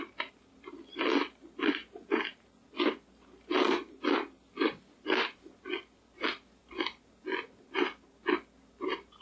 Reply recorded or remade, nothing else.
recorded